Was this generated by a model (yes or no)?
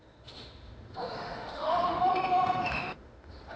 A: yes